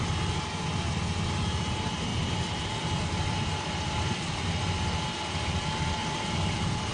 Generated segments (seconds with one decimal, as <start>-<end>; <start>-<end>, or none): 2.1-4.4; 6.0-6.9